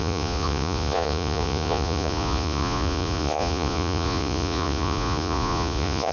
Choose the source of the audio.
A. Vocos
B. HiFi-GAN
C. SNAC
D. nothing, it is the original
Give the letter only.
A